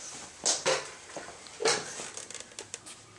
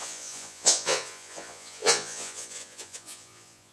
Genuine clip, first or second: first